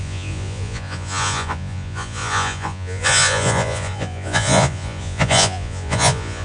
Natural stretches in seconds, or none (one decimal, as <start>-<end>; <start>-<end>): none